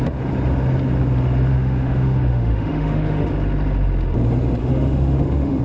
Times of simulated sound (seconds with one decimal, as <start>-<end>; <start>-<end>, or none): 1.5-3.3; 4.6-5.6